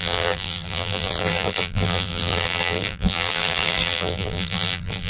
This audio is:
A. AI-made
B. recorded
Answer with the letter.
A